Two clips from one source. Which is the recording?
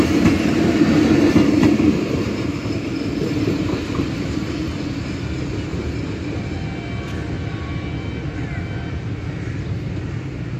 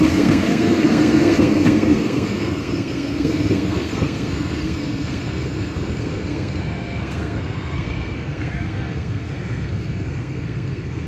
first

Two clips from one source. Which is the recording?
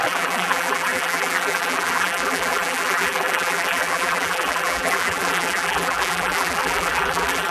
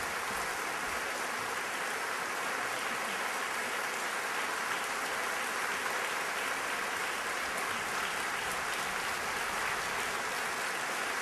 second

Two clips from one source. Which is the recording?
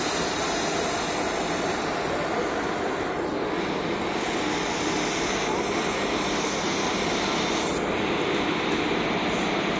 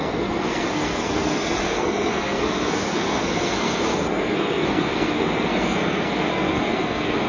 first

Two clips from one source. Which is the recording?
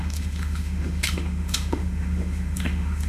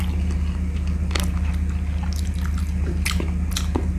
second